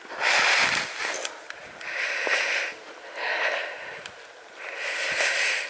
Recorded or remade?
recorded